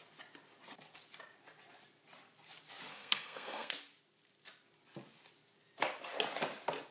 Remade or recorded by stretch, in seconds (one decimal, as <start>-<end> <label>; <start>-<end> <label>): 0.0-2.9 recorded; 2.9-3.7 remade; 3.7-6.9 recorded